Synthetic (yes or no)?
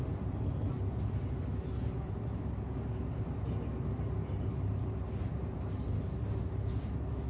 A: no